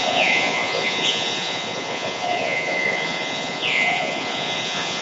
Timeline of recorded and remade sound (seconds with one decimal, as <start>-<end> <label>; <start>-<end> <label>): 0.0-5.0 remade